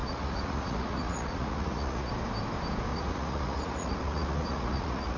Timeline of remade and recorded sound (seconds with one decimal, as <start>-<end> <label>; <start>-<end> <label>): 0.0-2.1 remade; 2.1-2.9 recorded; 2.9-5.2 remade